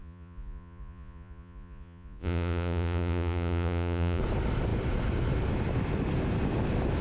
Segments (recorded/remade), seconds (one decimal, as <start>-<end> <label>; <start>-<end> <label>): 0.0-4.2 remade; 4.2-7.0 recorded